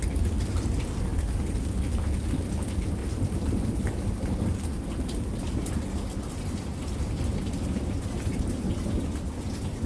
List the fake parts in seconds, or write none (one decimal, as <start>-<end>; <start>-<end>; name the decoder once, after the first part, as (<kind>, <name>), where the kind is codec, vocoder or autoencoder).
1.1-1.7 (vocoder, BigVGAN v2); 3.0-5.7; 6.7-8.4